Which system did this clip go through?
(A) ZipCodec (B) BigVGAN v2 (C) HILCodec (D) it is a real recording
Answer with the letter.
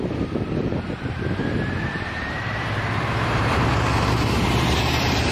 B